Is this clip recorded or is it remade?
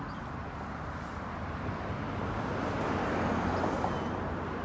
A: recorded